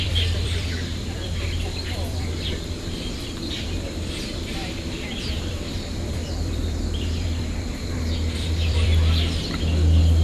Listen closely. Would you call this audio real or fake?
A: fake